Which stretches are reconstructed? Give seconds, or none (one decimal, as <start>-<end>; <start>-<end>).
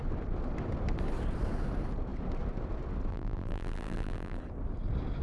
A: 3.1-4.4